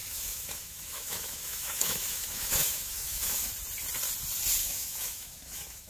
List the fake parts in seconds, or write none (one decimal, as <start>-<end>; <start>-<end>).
0.0-3.5; 4.6-5.9